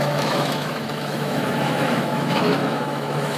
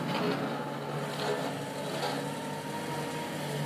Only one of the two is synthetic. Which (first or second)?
first